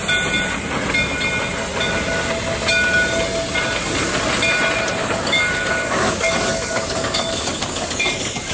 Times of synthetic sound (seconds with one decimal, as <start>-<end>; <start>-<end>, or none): 5.0-8.5